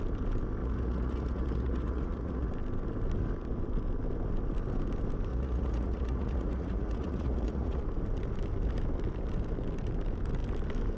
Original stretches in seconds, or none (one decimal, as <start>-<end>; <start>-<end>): 0.0-0.6; 2.5-5.3; 7.8-11.0